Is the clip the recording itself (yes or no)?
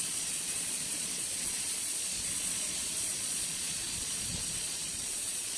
no